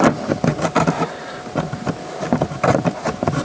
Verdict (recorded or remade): recorded